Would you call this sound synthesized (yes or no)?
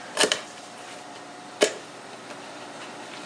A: yes